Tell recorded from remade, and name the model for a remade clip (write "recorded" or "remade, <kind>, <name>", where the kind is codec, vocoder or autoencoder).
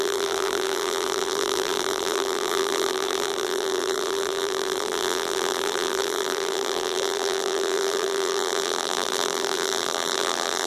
remade, vocoder, BigVGAN v2